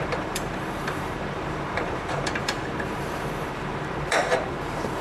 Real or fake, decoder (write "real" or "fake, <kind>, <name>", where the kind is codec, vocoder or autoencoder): fake, vocoder, BigVGAN v2